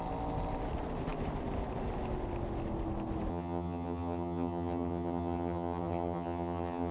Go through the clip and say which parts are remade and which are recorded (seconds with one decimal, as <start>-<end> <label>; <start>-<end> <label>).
0.0-3.3 recorded; 3.3-6.9 remade